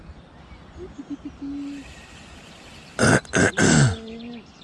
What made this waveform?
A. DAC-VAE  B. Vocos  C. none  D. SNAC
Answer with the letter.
C